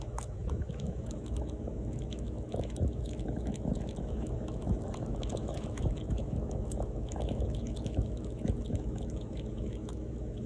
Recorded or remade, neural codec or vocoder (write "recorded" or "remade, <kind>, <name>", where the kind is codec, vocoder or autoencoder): remade, autoencoder, DAC-VAE